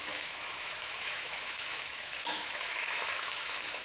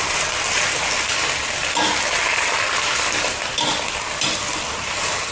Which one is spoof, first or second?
first